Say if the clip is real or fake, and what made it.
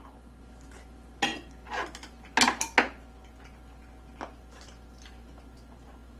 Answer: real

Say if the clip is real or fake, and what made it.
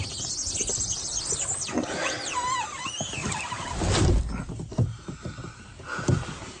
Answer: real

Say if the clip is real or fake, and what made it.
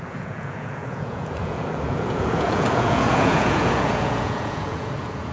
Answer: fake, vocoder, Vocos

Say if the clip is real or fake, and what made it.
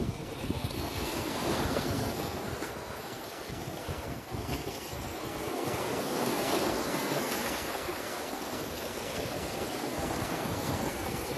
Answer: fake, codec, SNAC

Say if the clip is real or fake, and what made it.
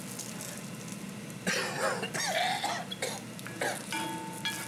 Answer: real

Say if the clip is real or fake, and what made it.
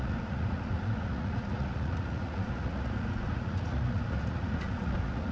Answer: fake, vocoder, Vocos